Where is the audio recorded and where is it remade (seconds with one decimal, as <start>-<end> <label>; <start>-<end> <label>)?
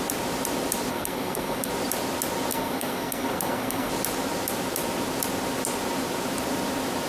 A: 0.0-0.9 recorded; 0.9-1.7 remade; 1.7-2.5 recorded; 2.5-3.9 remade; 3.9-7.1 recorded